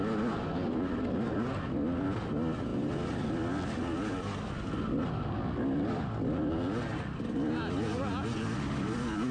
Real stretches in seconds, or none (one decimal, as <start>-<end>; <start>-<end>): 0.0-9.3